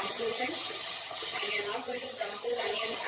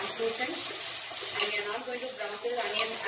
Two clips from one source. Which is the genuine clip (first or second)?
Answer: second